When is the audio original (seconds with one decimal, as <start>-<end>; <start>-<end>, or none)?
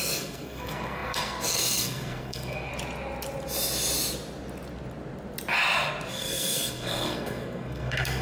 2.7-6.1